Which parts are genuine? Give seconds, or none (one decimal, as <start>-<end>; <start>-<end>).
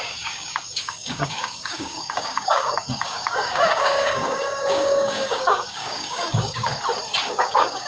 6.7-7.3